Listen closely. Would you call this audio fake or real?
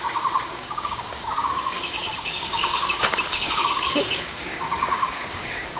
fake